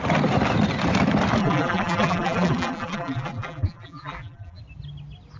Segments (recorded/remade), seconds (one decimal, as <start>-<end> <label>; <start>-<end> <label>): 0.0-1.4 recorded; 1.4-4.6 remade; 4.6-5.4 recorded